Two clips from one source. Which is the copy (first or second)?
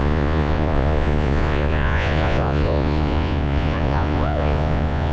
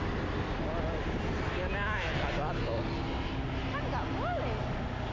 first